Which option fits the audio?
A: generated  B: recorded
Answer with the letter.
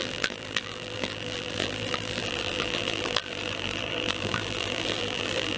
A